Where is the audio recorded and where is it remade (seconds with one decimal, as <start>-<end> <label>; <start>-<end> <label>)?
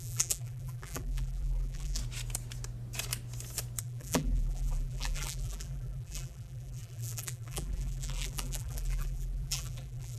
0.0-2.0 remade; 2.0-3.8 recorded; 3.8-10.2 remade